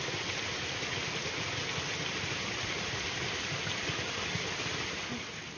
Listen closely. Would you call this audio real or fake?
real